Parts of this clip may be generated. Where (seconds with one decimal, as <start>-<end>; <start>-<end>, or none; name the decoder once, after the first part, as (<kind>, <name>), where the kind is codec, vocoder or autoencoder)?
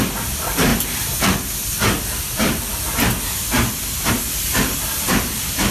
none